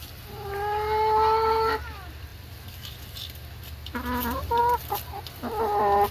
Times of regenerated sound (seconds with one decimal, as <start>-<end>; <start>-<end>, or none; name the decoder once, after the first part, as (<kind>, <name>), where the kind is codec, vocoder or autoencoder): none